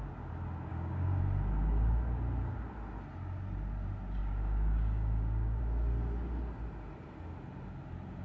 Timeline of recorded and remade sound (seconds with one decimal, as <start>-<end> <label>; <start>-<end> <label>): 0.0-0.7 recorded; 0.7-1.2 remade; 1.2-4.2 recorded; 4.2-5.6 remade; 5.6-8.2 recorded